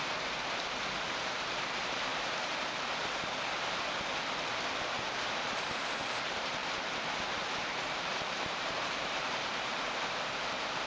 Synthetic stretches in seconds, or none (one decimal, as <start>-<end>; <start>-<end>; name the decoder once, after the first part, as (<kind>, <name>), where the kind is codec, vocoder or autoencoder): 0.0-2.1 (vocoder, BigVGAN v2); 5.4-10.9